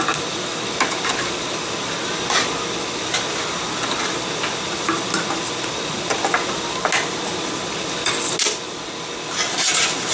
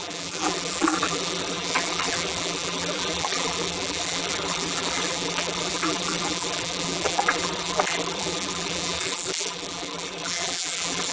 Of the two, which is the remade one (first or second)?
second